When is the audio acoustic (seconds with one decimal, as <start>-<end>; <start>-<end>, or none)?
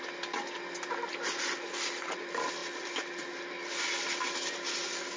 0.0-5.2